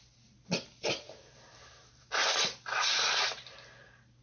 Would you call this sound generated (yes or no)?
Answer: no